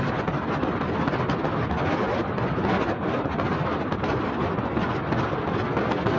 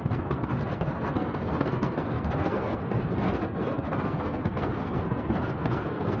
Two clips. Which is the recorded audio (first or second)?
first